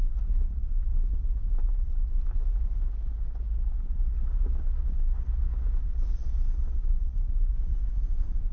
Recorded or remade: recorded